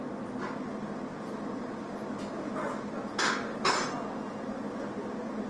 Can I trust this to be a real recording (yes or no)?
yes